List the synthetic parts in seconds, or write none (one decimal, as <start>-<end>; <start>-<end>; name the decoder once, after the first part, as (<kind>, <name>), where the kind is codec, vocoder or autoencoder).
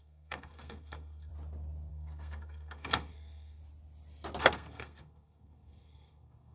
0.0-1.3 (codec, SNAC); 1.9-3.6; 4.4-6.5